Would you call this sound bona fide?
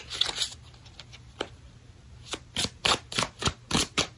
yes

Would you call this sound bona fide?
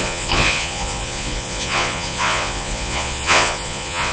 no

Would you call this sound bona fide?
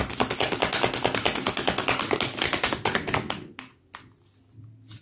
yes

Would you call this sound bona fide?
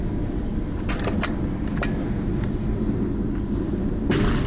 yes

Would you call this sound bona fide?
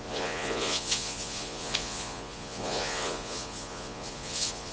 no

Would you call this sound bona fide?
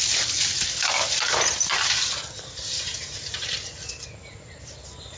yes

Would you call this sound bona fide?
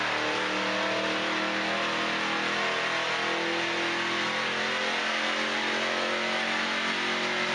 yes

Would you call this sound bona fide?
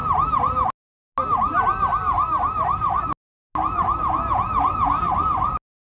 yes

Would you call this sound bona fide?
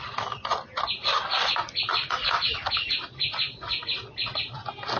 yes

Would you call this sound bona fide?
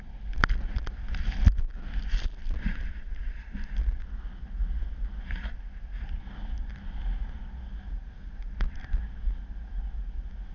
yes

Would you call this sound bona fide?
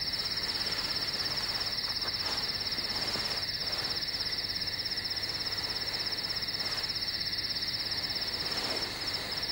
yes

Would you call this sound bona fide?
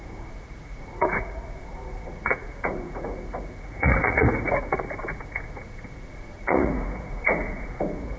no